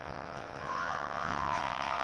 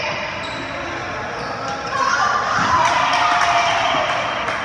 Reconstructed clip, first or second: first